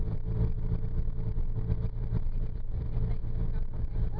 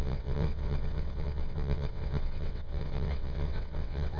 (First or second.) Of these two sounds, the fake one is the second